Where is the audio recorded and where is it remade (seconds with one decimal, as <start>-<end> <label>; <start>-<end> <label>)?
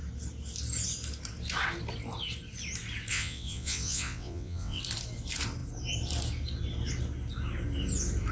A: 0.0-3.1 recorded; 3.1-4.8 remade; 4.8-8.3 recorded